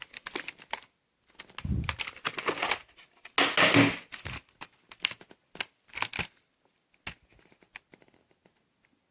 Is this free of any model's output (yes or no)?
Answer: yes